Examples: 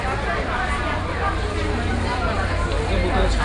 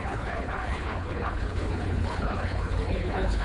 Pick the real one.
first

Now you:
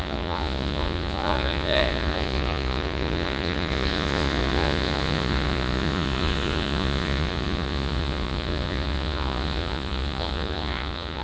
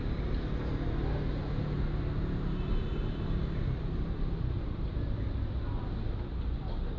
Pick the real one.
second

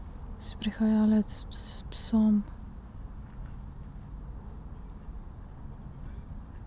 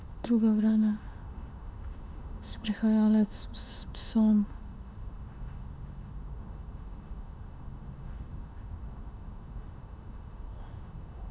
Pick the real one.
first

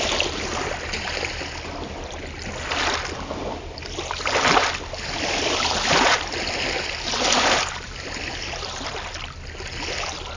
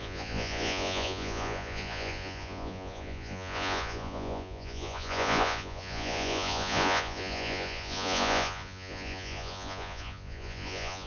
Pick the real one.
first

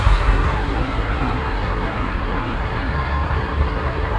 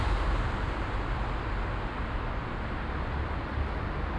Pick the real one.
second